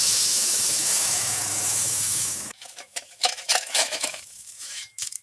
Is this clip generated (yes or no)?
yes